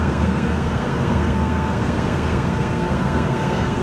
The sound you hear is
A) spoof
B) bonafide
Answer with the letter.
A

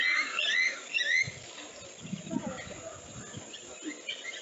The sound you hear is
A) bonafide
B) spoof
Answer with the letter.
A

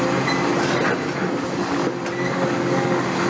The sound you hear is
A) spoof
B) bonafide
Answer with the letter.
B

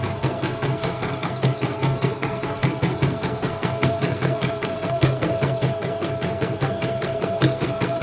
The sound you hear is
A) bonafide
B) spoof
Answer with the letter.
B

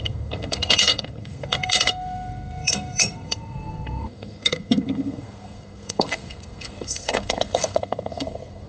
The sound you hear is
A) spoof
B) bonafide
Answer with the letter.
A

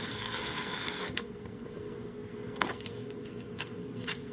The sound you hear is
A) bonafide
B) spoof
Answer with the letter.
B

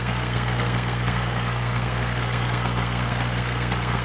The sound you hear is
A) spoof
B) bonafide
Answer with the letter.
A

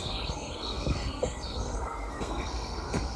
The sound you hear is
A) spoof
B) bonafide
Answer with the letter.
A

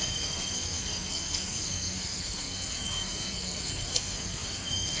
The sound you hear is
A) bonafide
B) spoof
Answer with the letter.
B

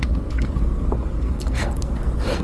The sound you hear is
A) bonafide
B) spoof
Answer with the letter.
B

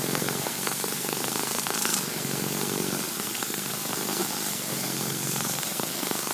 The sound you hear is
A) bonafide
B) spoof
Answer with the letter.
B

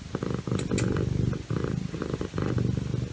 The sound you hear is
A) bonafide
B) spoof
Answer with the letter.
A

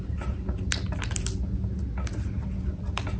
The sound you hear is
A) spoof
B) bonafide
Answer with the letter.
B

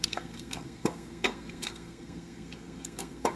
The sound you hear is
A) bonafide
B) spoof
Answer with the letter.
B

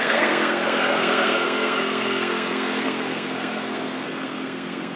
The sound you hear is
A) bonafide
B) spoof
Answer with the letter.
B